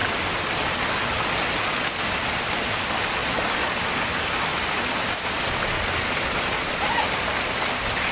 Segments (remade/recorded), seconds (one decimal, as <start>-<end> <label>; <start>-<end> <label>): 0.0-8.1 recorded

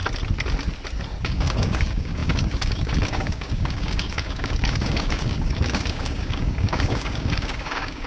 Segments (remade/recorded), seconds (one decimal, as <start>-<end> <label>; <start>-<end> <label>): 0.0-1.2 recorded; 1.2-8.1 remade

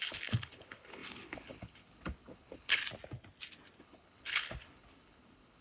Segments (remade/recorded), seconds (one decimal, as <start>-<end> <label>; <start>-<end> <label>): 0.0-2.8 remade; 2.8-3.8 recorded; 3.8-5.6 remade

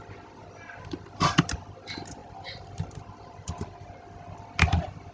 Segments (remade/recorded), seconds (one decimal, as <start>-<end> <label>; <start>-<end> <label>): 0.0-2.2 recorded; 2.2-4.0 remade; 4.0-5.1 recorded

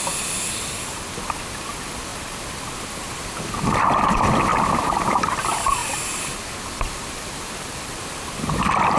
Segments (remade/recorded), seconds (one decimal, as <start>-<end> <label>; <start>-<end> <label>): 0.0-9.0 recorded

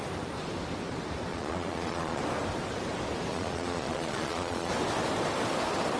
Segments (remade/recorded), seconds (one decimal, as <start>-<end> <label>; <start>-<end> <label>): 0.0-1.3 recorded; 1.3-2.2 remade; 2.2-3.3 recorded; 3.3-4.7 remade; 4.7-6.0 recorded

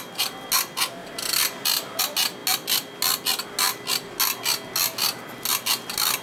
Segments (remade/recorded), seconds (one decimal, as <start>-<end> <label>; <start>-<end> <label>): 0.0-6.2 recorded